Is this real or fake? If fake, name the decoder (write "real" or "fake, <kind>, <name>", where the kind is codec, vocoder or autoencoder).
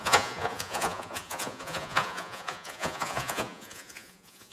fake, vocoder, Vocos